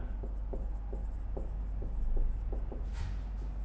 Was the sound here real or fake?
real